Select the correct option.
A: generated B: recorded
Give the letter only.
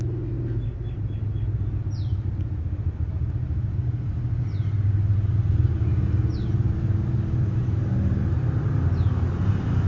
B